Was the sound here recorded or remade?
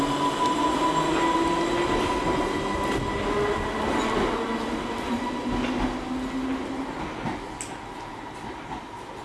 recorded